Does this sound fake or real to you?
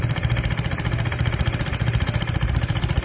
real